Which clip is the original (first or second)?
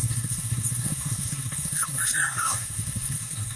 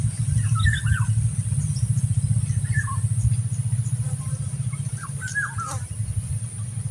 second